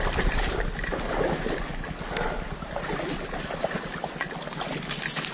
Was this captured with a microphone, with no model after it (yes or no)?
yes